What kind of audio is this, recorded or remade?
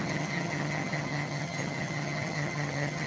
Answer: remade